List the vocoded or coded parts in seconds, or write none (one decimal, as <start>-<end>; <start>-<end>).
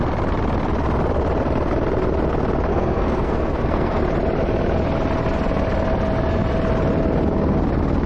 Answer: 2.7-4.0